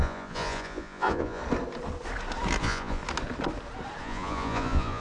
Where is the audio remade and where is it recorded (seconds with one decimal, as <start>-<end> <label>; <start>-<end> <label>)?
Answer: 0.0-1.4 remade; 1.4-2.6 recorded; 2.6-3.0 remade; 3.0-4.0 recorded; 4.0-5.0 remade